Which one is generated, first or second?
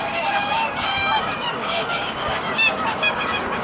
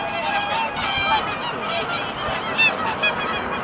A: first